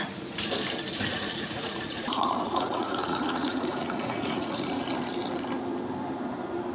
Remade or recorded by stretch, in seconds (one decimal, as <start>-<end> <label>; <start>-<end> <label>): 0.0-1.1 recorded; 1.1-4.8 remade; 4.8-6.7 recorded